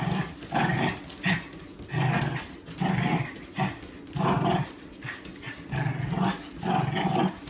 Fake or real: real